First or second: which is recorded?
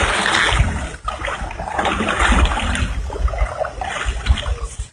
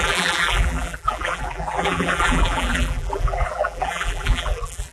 first